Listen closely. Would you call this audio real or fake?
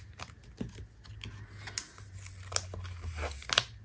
real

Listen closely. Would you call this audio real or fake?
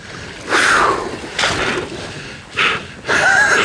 real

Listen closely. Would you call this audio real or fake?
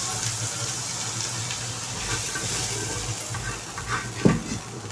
real